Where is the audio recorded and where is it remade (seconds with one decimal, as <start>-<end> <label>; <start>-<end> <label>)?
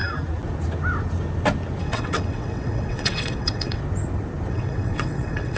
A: 0.0-1.8 recorded; 1.8-3.8 remade; 3.8-4.5 recorded; 4.5-5.6 remade